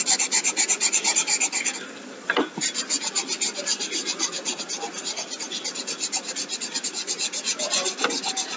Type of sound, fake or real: real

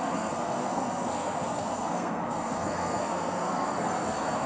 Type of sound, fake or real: fake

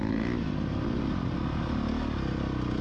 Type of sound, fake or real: real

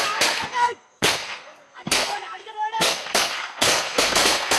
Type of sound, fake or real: fake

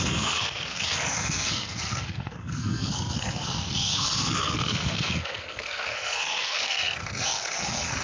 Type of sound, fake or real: fake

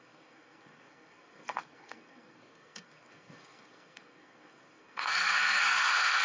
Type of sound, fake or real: fake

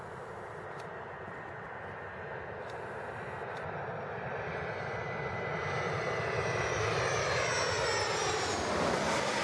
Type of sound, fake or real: real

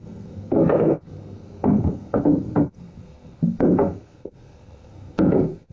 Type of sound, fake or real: fake